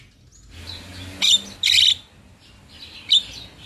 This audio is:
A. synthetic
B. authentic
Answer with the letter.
B